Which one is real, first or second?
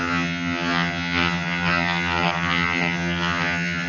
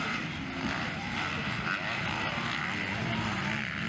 second